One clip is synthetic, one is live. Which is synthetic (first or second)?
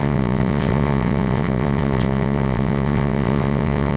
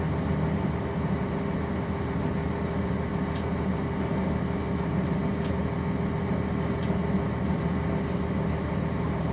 first